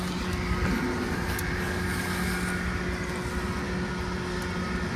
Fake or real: real